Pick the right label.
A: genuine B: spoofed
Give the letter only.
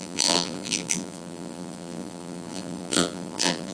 B